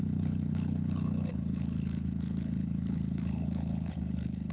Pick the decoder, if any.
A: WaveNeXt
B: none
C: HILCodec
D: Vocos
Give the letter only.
C